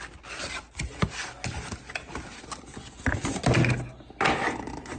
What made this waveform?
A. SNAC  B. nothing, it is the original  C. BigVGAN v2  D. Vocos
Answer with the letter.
B